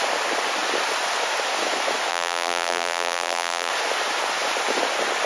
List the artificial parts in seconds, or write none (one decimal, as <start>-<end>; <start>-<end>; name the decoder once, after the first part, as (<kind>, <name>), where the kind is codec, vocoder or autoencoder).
2.1-3.7 (vocoder, BigVGAN v2)